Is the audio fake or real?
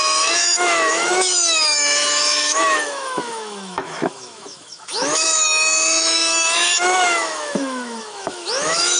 fake